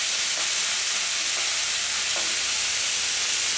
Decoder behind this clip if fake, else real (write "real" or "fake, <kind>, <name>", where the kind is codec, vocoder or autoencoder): real